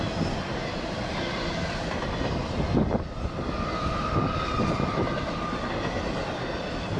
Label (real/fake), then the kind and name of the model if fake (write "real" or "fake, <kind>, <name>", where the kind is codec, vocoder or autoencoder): real